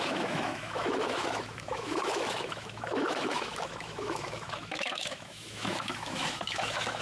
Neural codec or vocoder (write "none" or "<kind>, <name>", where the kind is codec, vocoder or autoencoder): autoencoder, DAC-VAE